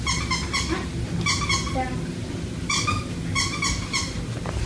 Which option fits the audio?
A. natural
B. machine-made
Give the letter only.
A